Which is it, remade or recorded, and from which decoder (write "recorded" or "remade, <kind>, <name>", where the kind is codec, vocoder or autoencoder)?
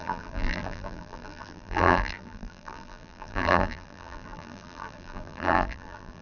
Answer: remade, vocoder, BigVGAN v2